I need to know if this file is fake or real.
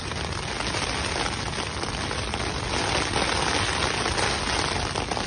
real